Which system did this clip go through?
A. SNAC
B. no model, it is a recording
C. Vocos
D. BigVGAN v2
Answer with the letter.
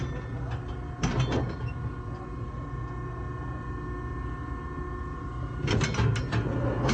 B